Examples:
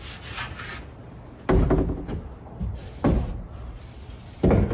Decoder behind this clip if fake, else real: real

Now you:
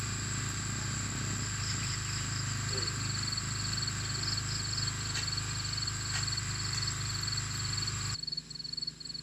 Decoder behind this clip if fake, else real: real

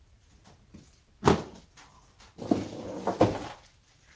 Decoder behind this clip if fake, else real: real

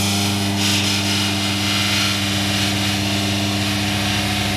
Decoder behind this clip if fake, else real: real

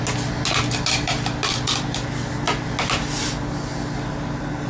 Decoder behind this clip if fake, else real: real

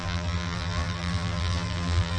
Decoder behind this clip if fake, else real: fake, vocoder, BigVGAN v2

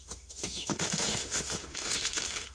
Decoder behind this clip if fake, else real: fake, autoencoder, DAC-VAE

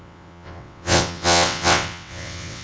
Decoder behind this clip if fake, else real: fake, vocoder, WaveNeXt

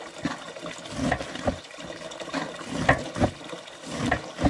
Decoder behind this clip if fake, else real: real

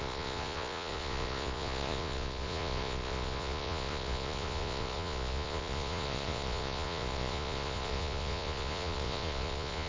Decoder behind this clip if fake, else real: fake, vocoder, Vocos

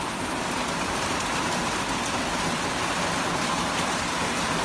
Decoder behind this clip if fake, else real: real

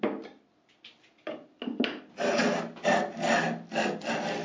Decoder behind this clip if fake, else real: real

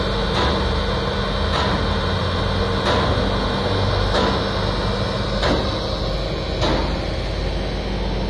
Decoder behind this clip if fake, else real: real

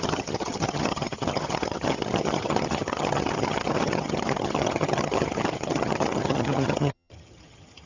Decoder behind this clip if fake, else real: fake, vocoder, HiFi-GAN